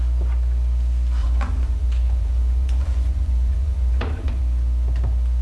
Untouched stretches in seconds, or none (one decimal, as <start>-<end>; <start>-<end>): 0.0-1.2; 4.4-5.4